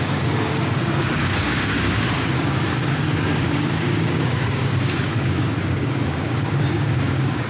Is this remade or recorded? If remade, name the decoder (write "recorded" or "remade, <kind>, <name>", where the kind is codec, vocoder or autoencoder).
remade, codec, DAC